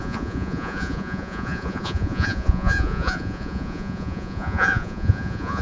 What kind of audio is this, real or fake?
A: fake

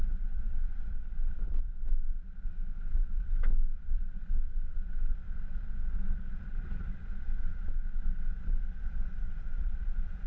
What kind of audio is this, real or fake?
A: fake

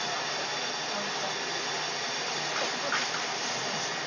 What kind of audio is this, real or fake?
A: real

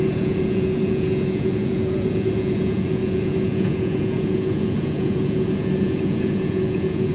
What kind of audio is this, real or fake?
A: fake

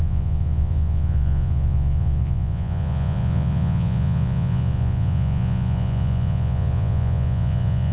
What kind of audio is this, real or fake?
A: fake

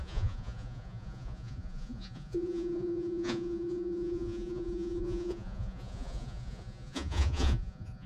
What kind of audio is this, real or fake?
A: fake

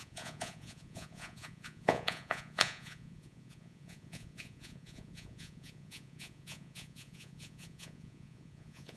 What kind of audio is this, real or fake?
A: fake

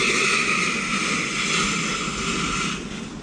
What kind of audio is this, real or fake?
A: real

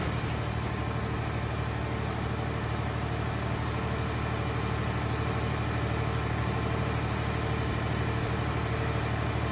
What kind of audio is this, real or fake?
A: real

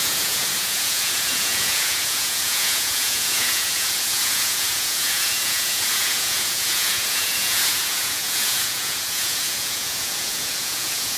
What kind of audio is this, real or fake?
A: fake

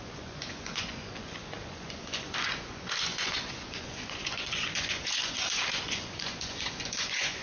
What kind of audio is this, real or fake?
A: fake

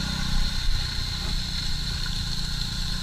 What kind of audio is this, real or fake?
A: real